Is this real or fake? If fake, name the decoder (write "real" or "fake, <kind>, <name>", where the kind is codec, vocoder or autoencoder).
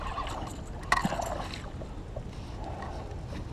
real